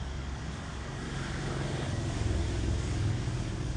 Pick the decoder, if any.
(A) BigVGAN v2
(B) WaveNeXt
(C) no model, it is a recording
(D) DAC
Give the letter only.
D